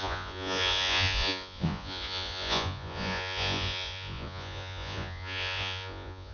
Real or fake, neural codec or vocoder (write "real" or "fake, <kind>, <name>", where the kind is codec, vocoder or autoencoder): fake, vocoder, Vocos